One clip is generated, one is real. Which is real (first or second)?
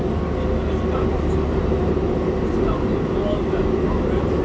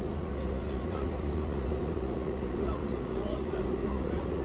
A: first